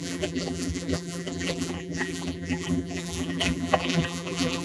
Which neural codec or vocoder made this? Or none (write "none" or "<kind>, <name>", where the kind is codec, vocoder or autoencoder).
vocoder, BigVGAN v2